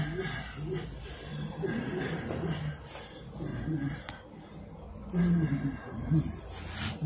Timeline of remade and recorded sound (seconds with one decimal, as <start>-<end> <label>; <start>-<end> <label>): 0.0-1.3 recorded; 1.3-2.6 remade; 2.6-3.5 recorded; 3.5-4.5 remade; 4.5-5.8 recorded; 5.8-6.4 remade; 6.4-7.1 recorded